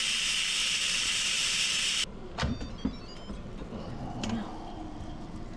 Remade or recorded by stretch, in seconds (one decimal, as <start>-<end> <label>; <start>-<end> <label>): 0.0-0.6 recorded; 0.6-2.0 remade; 2.0-5.6 recorded